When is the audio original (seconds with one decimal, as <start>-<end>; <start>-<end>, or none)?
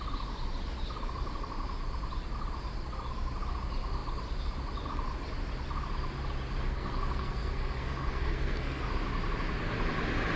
0.0-6.6; 8.8-10.4